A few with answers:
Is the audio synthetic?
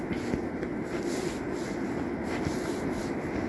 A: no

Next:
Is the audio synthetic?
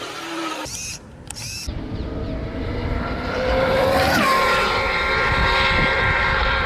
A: yes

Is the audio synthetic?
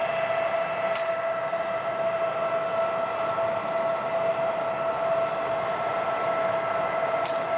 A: no